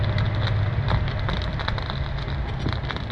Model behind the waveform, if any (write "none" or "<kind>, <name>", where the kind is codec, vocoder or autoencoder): none